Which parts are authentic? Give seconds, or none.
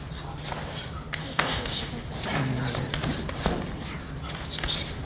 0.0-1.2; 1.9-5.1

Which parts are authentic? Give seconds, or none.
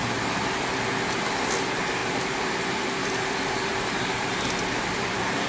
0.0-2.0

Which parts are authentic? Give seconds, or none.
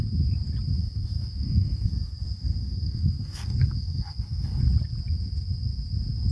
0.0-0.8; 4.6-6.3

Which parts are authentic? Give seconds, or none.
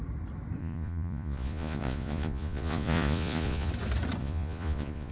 0.0-0.6; 3.7-4.2